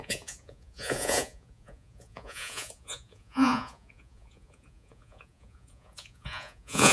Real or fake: fake